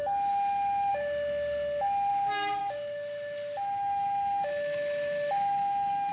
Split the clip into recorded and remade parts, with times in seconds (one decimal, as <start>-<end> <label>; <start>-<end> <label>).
0.0-2.6 recorded; 2.6-6.1 remade